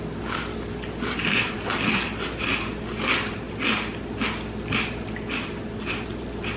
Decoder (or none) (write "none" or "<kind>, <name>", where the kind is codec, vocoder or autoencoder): none